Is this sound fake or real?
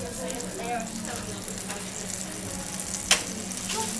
real